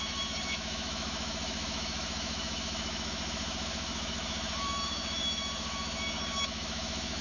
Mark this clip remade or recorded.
remade